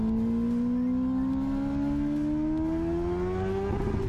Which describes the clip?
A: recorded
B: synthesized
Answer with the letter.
A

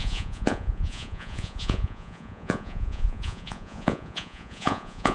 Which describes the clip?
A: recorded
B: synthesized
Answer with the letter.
B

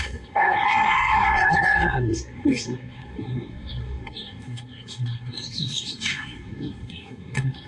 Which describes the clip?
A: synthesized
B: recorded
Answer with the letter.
A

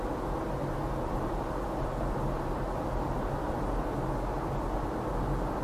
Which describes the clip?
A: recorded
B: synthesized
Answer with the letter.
A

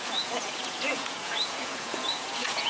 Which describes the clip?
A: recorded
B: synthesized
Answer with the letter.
B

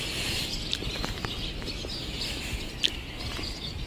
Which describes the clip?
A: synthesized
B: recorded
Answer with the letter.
B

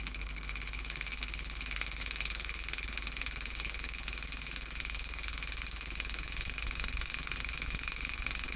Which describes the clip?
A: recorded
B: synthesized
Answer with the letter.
B